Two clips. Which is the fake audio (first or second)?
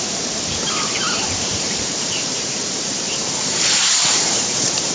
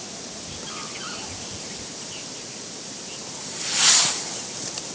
first